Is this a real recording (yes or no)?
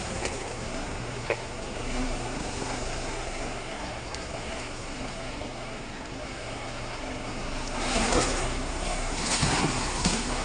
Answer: no